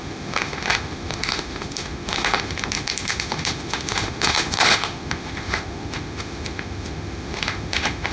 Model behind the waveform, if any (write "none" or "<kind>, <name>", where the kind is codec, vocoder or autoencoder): autoencoder, DAC-VAE